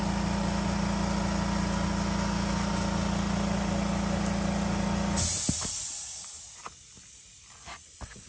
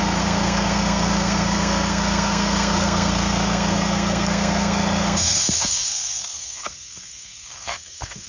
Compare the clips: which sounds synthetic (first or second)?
second